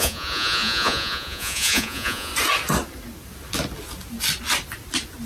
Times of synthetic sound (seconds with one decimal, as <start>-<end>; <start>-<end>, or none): 0.0-2.3

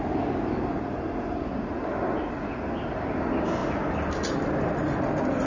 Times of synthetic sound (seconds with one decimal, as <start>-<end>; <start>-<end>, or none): none

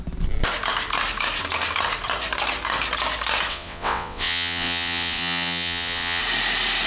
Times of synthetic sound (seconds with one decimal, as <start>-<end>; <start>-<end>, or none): 3.5-6.2

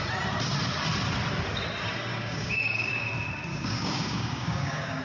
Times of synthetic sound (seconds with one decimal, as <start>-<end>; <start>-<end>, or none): 2.1-3.1; 3.5-5.0

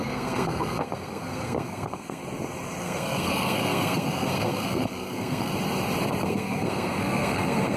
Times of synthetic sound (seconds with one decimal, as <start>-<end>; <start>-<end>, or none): 0.0-2.2; 2.8-5.5; 6.2-7.8

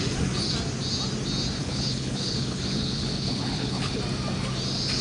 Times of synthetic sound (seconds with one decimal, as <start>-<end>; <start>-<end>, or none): 1.6-4.0

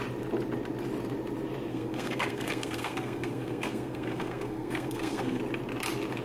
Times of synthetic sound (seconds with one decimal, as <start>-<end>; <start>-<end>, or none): 1.7-5.4